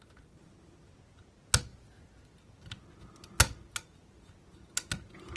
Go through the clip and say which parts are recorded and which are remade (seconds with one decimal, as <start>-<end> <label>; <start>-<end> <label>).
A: 0.0-5.4 recorded